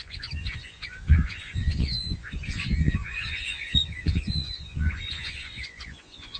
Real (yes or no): no